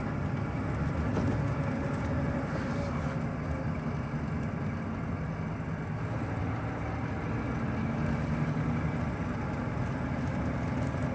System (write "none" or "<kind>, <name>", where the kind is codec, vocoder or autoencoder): none